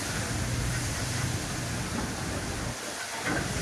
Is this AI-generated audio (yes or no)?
no